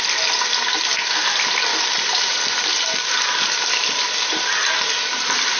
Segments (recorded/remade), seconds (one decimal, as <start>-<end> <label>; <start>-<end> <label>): 0.0-5.6 recorded